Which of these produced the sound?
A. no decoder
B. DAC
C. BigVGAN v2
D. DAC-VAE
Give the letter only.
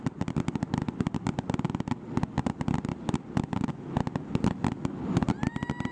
A